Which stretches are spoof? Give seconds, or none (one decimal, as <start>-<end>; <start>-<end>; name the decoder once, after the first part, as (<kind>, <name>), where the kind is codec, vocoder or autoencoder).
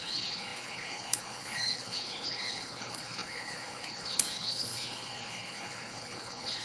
0.0-6.6 (codec, HILCodec)